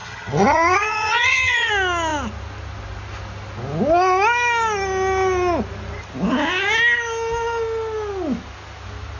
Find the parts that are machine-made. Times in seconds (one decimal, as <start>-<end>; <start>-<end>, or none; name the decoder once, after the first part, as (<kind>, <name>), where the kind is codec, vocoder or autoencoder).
0.0-1.7 (vocoder, HiFi-GAN)